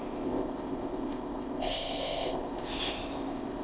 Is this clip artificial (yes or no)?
yes